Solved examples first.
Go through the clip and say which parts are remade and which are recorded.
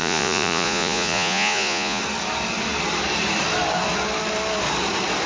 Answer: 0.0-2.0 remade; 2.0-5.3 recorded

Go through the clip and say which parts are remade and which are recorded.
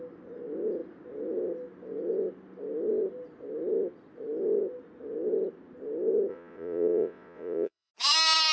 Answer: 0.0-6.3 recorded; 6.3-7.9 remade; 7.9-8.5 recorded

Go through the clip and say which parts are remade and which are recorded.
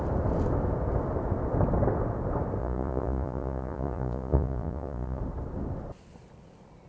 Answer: 0.0-2.6 recorded; 2.6-5.2 remade; 5.2-6.9 recorded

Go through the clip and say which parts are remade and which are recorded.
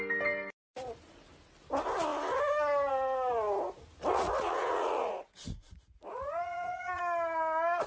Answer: 0.0-4.1 recorded; 4.1-7.0 remade; 7.0-7.9 recorded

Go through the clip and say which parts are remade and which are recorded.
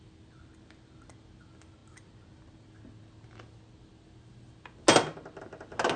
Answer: 0.0-6.0 recorded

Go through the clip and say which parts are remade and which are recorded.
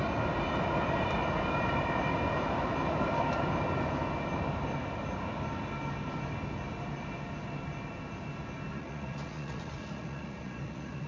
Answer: 0.0-8.7 recorded; 8.7-11.1 remade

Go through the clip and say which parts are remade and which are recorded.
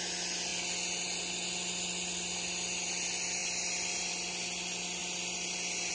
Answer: 0.0-5.9 recorded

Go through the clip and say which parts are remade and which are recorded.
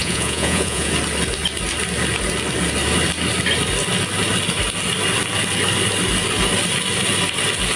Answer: 0.0-0.9 remade; 0.9-7.8 recorded